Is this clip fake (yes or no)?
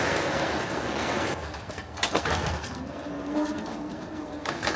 yes